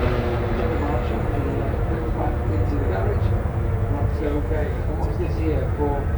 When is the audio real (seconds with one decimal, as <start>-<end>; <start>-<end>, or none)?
0.0-4.1; 4.9-6.2